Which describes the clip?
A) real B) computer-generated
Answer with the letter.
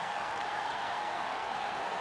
B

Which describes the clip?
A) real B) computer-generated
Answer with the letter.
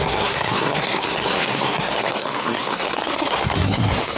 B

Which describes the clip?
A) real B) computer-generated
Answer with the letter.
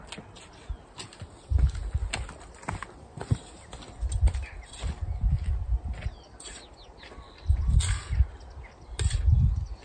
A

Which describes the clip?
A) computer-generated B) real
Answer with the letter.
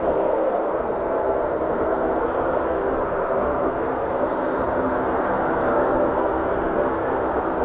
A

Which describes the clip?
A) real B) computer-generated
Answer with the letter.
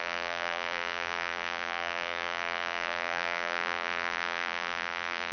B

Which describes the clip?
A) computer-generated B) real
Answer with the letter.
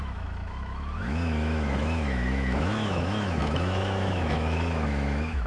A